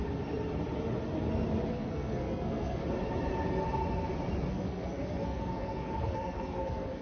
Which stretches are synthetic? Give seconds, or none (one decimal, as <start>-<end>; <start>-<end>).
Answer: 1.7-2.8; 4.5-7.0